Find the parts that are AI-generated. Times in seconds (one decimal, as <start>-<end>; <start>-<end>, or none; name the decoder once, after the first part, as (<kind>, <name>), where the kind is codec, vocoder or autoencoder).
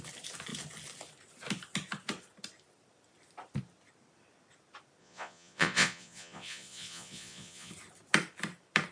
5.0-7.7 (vocoder, Vocos)